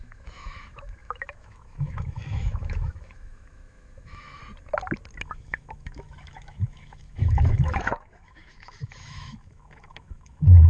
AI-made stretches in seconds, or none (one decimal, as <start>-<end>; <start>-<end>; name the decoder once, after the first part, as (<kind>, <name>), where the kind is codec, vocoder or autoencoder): 0.0-4.4 (autoencoder, DAC-VAE); 5.3-10.7